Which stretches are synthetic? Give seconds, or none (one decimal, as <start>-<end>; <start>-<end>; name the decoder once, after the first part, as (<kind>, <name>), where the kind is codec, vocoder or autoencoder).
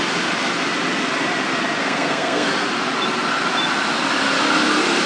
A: 1.8-2.5 (codec, SNAC)